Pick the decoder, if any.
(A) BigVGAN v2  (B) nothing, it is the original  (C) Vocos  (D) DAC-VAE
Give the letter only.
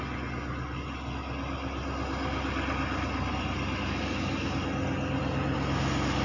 B